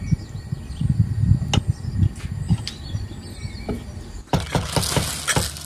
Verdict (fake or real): real